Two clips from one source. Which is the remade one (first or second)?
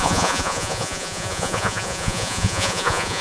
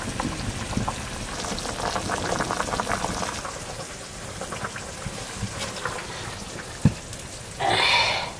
first